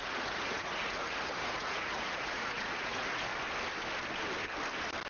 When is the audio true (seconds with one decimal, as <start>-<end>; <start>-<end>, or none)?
3.3-5.1